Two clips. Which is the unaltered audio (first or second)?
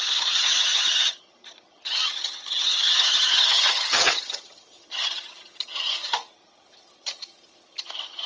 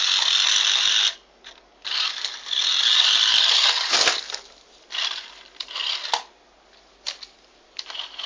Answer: second